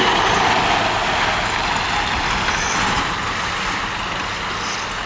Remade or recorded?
recorded